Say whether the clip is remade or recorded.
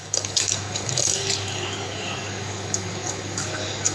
remade